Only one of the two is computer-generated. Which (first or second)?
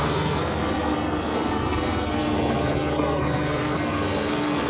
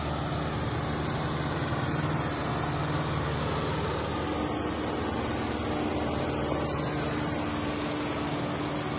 first